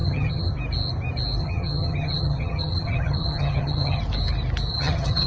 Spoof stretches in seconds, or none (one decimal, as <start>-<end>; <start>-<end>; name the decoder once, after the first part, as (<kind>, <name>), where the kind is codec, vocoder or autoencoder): 0.0-0.5 (vocoder, HiFi-GAN); 1.4-4.0; 4.7-5.3